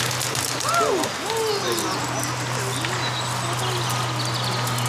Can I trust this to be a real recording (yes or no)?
yes